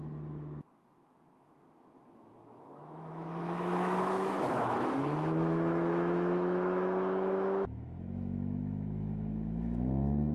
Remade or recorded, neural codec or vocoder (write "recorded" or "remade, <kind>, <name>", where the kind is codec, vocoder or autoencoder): remade, autoencoder, DAC-VAE